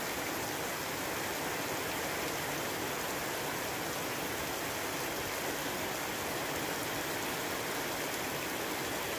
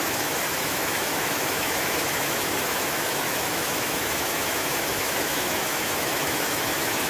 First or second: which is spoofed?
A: second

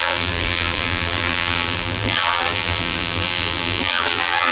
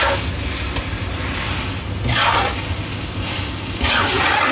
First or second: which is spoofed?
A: first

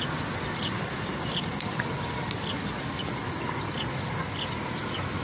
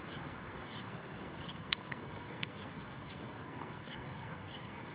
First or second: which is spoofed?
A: second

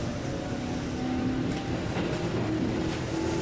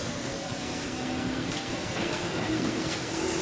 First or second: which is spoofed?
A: second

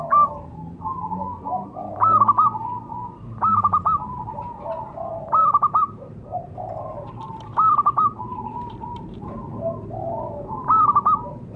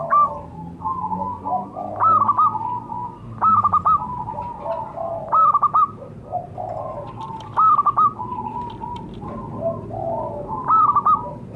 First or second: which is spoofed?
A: first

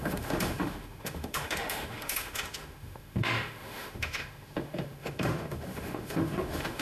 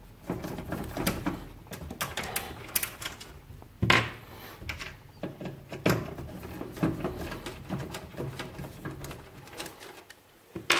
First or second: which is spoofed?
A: first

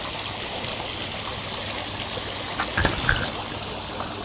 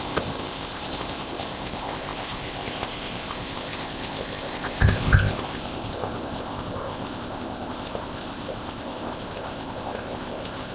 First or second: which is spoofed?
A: second